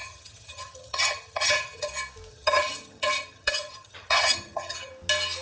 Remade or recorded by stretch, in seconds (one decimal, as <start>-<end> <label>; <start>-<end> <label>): 0.0-1.9 remade; 1.9-2.3 recorded; 2.3-4.9 remade; 4.9-5.4 recorded